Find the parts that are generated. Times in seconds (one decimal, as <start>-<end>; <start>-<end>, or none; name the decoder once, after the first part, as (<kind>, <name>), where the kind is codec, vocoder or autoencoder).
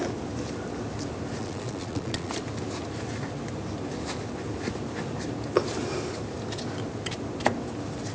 1.4-2.3 (vocoder, Vocos)